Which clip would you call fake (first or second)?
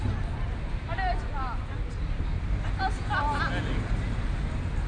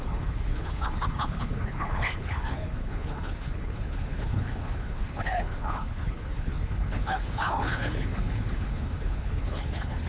second